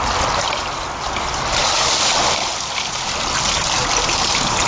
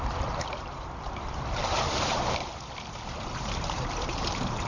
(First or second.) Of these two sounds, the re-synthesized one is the second